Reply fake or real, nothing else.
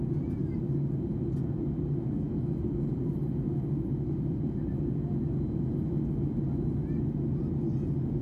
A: real